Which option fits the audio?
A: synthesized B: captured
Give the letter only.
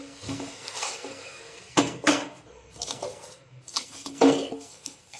A